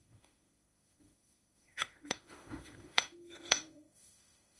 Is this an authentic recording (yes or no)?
no